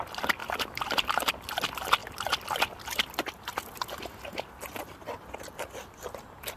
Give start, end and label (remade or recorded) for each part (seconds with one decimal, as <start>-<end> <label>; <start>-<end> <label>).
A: 0.0-6.6 recorded